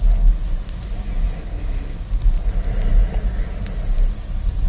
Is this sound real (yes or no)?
yes